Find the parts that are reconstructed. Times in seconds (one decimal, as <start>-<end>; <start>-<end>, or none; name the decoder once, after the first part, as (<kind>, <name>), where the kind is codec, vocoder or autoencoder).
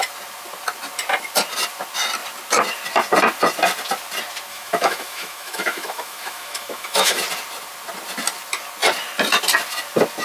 4.5-7.2 (autoencoder, DAC-VAE)